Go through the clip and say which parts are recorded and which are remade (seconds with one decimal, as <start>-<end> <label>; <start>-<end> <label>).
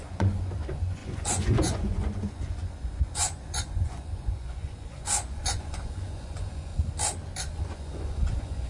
0.0-6.7 remade; 6.7-7.5 recorded; 7.5-8.7 remade